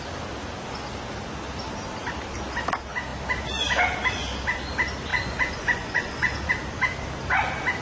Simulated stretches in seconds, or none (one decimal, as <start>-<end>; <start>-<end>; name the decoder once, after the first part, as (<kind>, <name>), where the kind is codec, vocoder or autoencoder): 5.1-6.5 (vocoder, Vocos)